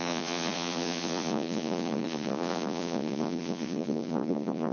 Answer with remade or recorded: remade